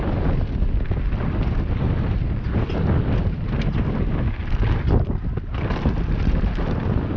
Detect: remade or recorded recorded